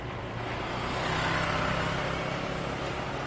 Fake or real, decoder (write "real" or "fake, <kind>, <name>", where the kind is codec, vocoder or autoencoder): real